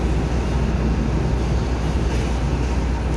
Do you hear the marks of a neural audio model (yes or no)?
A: no